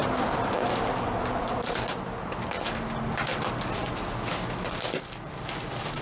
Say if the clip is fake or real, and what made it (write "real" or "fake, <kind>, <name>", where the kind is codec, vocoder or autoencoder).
real